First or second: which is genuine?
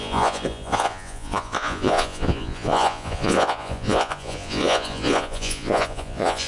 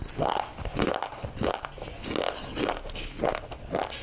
second